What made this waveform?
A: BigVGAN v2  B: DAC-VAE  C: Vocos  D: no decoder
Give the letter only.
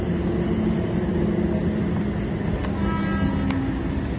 D